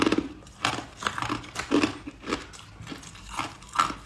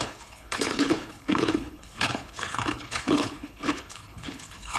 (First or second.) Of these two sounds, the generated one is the second